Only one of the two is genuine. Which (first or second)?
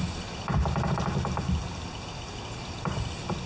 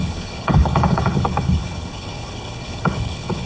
first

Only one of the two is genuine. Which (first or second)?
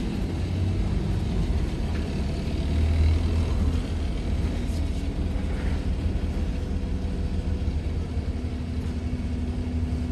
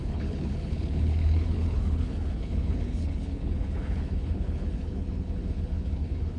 first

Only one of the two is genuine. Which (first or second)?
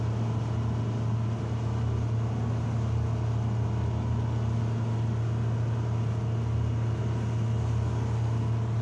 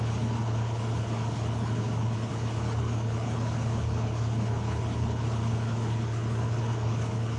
first